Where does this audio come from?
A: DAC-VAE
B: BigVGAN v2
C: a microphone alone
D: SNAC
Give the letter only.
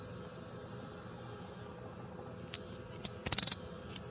C